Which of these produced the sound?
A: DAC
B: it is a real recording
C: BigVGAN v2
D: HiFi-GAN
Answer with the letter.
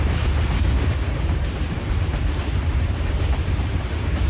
C